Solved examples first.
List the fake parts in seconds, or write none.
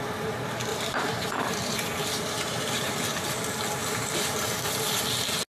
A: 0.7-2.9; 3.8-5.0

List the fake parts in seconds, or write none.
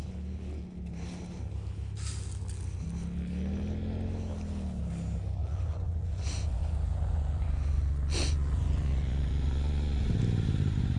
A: 5.4-10.2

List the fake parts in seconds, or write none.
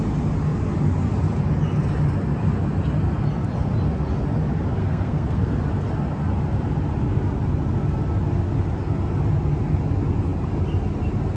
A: 4.8-5.5